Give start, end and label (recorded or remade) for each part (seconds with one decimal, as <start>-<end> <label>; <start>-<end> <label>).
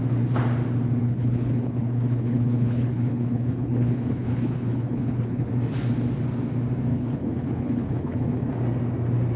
0.0-1.0 recorded; 1.0-5.5 remade; 5.5-6.9 recorded; 6.9-8.5 remade; 8.5-9.4 recorded